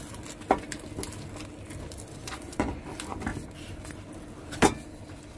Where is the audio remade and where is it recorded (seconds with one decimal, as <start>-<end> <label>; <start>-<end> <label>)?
0.0-2.2 recorded; 2.2-2.8 remade; 2.8-5.4 recorded